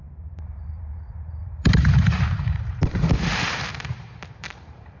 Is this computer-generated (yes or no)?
yes